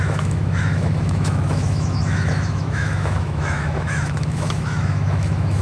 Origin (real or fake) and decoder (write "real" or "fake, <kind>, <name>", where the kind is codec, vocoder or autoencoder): fake, autoencoder, DAC-VAE